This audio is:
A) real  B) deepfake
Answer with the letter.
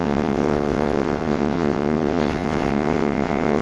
B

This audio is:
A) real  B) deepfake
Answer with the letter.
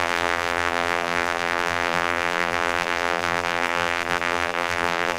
B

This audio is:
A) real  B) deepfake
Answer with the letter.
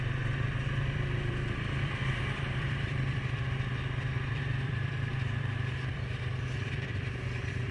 B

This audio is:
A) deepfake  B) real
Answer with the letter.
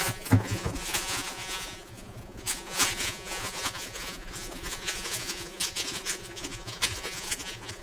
A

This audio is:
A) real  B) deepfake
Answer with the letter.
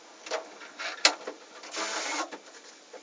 A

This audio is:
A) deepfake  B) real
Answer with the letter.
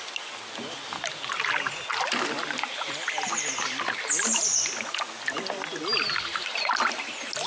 B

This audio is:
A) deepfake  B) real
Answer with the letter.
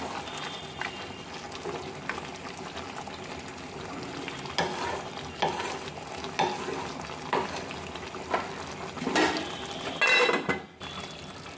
B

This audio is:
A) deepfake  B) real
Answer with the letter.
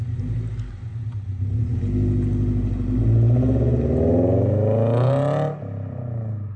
B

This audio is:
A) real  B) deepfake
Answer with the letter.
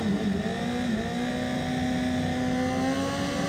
A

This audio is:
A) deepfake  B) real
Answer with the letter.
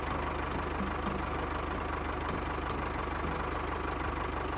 B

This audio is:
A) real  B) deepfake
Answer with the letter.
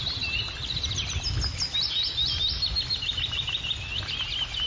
A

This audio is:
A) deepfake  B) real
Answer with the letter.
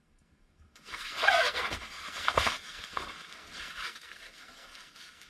A